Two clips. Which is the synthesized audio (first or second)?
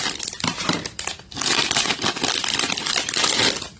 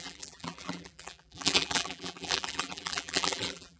second